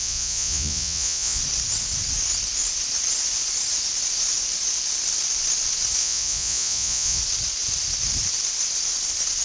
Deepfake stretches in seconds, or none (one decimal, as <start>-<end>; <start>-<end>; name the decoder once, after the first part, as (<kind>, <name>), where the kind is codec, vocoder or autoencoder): 0.0-1.4 (vocoder, Vocos); 6.0-7.2